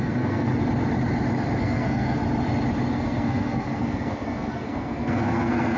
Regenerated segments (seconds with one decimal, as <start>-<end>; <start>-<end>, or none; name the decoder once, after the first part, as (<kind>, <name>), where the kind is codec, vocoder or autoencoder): 0.0-0.5 (codec, SNAC); 1.6-2.2; 2.9-5.8